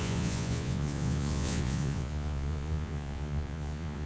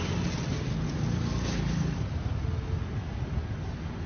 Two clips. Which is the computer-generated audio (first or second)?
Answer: first